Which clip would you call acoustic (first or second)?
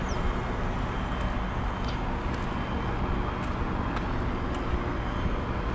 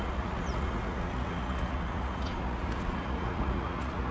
first